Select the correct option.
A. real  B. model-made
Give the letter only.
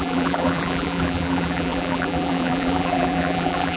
B